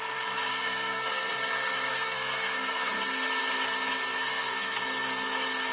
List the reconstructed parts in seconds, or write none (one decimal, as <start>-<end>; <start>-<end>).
0.5-1.3; 1.9-3.4; 4.1-4.8

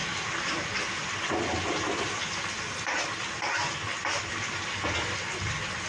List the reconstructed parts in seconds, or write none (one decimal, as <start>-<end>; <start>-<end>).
none

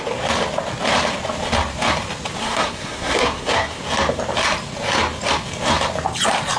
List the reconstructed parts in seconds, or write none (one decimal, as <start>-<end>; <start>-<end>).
2.4-3.8

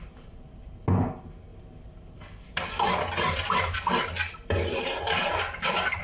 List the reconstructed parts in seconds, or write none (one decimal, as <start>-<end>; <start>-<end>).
none

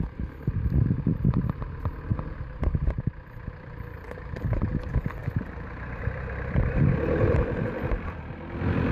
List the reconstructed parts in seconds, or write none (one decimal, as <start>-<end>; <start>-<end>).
0.0-8.9

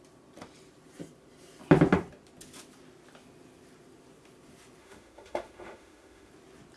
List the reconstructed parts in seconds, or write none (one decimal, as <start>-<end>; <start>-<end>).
4.8-6.3